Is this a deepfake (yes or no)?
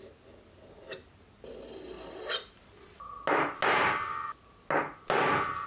no